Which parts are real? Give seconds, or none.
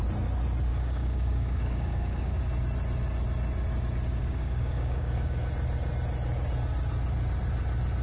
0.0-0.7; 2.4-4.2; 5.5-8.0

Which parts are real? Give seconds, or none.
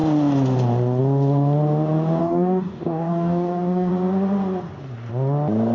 0.0-2.2; 3.9-5.7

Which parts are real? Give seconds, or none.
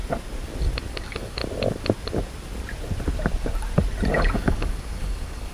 0.0-0.9; 1.4-4.1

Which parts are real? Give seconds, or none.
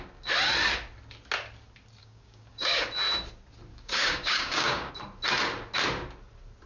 0.0-2.0; 2.8-3.7; 4.9-6.7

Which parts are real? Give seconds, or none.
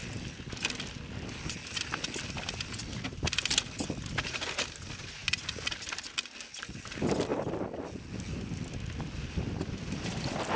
0.0-10.6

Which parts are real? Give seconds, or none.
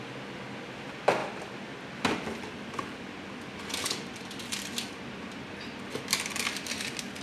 0.0-7.2